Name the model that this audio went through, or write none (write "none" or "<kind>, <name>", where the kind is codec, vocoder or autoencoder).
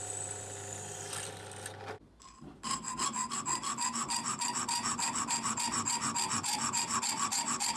none